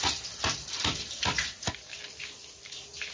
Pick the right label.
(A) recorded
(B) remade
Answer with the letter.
A